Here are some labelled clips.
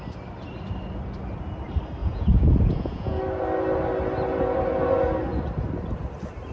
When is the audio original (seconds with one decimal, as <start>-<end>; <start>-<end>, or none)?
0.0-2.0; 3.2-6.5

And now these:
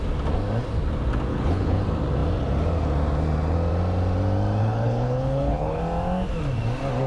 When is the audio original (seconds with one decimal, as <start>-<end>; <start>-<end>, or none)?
0.0-1.3; 1.8-4.6; 5.8-7.1

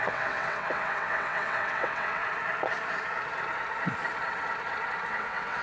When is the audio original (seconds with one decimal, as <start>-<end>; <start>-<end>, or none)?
2.2-5.1

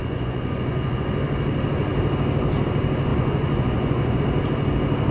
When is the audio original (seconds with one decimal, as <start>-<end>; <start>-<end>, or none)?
1.1-3.1; 4.2-5.1

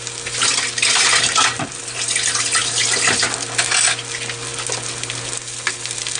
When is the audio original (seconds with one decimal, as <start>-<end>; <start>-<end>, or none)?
0.0-6.2

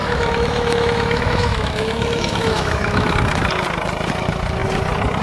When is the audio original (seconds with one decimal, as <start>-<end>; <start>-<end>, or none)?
3.1-5.2